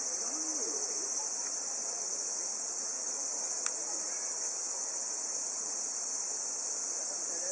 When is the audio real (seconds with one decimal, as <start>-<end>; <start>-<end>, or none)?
0.0-1.8; 6.3-7.5